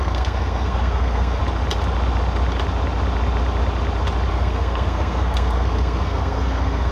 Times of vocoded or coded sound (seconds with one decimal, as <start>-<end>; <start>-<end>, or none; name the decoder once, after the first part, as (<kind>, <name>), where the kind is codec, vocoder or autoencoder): 0.0-1.4 (codec, SNAC); 4.3-6.9